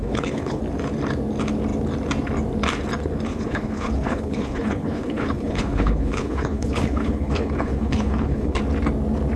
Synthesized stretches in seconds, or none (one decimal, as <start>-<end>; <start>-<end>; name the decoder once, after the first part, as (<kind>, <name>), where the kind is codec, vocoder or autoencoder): 0.0-0.6 (codec, HILCodec); 3.3-8.6